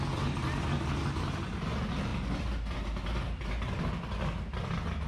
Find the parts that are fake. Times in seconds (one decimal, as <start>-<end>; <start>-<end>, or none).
none